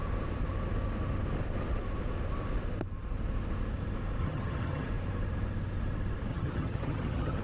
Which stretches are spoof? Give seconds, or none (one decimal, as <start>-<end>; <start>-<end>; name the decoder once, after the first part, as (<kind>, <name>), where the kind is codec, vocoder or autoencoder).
4.2-4.9 (vocoder, HiFi-GAN); 6.3-7.4